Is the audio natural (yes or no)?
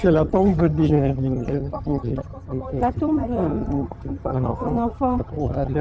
no